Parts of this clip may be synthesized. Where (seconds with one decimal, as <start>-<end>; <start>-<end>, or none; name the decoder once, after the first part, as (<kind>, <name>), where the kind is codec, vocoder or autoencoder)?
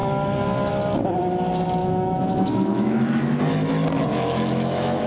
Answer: 1.8-3.4 (autoencoder, DAC-VAE); 4.1-5.1